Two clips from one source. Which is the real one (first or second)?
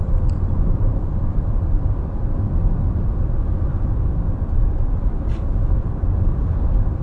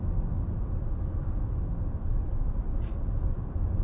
second